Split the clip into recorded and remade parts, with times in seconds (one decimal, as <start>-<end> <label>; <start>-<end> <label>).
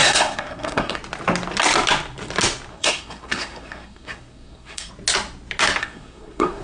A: 0.0-1.0 remade; 1.0-2.7 recorded; 2.7-4.9 remade; 4.9-5.8 recorded; 5.8-6.6 remade